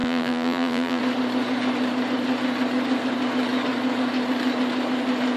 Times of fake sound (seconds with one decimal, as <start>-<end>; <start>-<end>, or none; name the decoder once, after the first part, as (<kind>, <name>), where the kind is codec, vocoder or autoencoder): 0.0-1.0 (vocoder, BigVGAN v2)